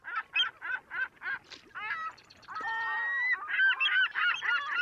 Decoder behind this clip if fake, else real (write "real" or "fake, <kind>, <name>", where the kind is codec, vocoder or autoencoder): real